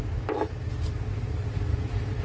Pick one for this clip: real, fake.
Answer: real